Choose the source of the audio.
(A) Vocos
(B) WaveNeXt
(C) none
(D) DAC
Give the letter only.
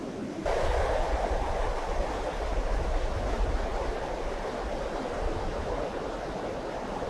C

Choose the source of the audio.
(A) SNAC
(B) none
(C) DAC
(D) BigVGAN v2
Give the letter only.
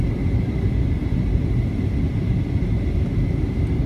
B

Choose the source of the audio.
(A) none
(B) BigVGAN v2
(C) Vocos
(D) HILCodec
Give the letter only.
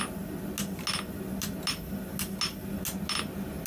A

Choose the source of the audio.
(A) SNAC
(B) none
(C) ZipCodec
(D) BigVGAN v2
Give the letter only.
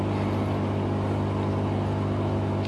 B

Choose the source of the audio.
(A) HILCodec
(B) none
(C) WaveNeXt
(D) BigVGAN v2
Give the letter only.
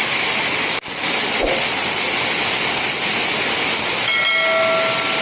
B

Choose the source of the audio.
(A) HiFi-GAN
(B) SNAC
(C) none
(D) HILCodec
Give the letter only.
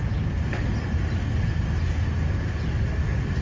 C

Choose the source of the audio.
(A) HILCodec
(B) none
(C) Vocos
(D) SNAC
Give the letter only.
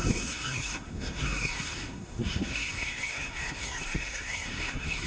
D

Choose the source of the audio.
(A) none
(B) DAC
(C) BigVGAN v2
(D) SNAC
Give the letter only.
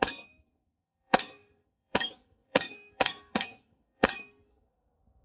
D